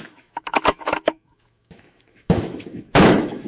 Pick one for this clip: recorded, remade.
remade